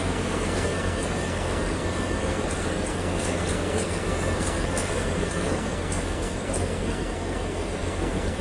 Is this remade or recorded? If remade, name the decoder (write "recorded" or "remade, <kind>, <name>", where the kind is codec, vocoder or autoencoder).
remade, codec, SNAC